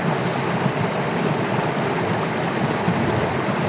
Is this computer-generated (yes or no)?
no